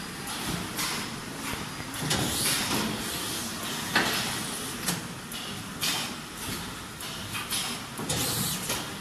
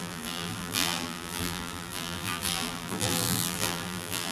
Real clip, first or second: first